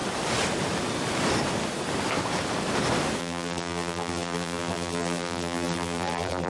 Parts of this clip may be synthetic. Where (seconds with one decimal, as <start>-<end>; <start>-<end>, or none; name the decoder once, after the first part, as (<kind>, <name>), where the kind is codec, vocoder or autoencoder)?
3.2-6.5 (vocoder, BigVGAN v2)